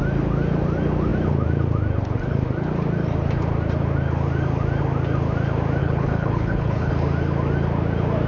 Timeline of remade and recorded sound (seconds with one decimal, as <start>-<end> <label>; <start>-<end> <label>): 0.0-5.8 recorded; 5.8-6.9 remade; 6.9-8.3 recorded